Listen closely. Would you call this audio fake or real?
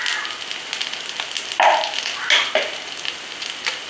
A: real